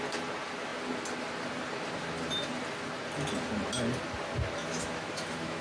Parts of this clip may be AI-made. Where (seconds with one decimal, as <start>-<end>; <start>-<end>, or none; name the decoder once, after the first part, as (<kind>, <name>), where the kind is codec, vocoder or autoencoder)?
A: 4.6-5.6 (autoencoder, DAC-VAE)